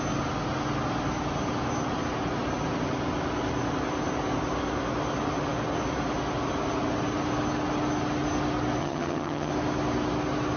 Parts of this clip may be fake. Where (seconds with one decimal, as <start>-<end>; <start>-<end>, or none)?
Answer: 8.8-9.5